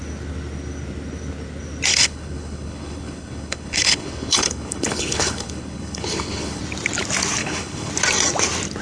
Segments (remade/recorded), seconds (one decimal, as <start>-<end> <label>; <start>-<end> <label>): 0.0-1.9 recorded; 1.9-6.6 remade; 6.6-7.4 recorded; 7.4-7.9 remade; 7.9-8.8 recorded